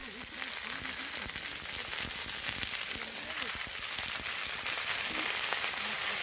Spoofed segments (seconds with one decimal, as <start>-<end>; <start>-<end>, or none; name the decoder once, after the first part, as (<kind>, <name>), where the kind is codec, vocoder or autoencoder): none